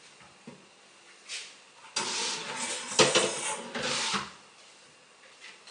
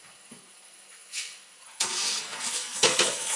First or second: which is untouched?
first